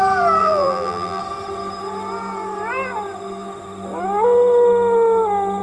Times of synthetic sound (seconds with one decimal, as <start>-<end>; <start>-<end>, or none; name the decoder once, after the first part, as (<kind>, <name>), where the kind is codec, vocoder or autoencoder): 0.4-1.2 (vocoder, BigVGAN v2)